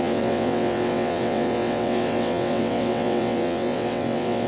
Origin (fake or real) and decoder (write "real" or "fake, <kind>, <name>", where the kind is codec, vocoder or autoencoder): fake, vocoder, WaveNeXt